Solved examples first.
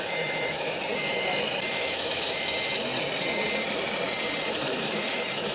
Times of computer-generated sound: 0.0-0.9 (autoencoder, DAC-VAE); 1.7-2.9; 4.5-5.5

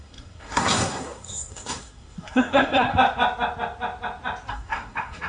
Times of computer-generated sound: 0.0-2.9 (codec, SNAC); 4.5-5.3

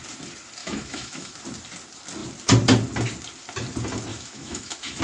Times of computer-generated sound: 0.6-1.3 (autoencoder, DAC-VAE); 4.1-5.0